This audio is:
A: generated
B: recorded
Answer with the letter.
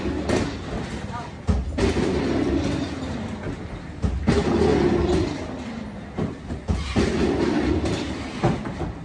B